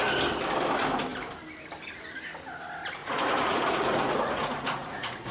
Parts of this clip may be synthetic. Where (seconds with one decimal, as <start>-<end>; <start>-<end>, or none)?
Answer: 3.0-5.3